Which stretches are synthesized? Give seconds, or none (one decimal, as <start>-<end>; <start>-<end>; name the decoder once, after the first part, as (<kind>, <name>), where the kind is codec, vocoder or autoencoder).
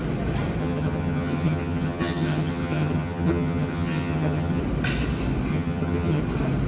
0.6-4.6 (vocoder, HiFi-GAN); 5.5-6.2